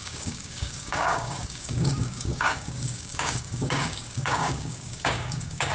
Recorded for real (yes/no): no